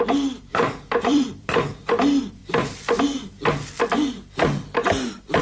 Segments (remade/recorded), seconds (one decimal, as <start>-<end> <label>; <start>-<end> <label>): 0.0-0.5 recorded; 0.5-1.9 remade; 1.9-2.4 recorded; 2.4-3.0 remade; 3.0-5.4 recorded